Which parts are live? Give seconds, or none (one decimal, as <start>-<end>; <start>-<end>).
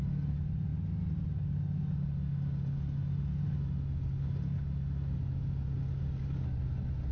0.0-7.1